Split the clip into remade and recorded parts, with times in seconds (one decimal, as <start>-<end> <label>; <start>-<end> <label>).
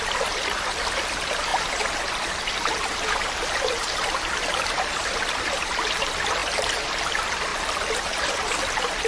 0.0-9.1 recorded